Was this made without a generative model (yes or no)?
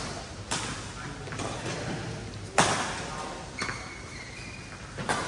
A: yes